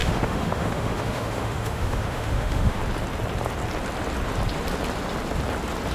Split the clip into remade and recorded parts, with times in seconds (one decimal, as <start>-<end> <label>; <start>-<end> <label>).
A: 0.0-2.8 remade; 2.8-5.9 recorded